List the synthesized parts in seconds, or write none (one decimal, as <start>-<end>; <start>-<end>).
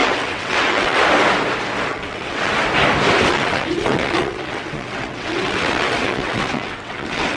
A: 0.0-1.0; 1.9-2.5; 3.3-7.4